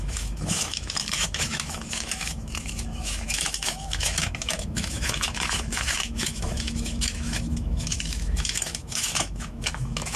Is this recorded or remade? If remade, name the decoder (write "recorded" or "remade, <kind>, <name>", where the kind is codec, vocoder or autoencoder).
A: remade, autoencoder, DAC-VAE